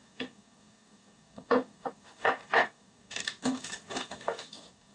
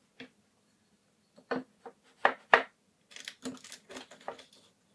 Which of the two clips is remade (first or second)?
first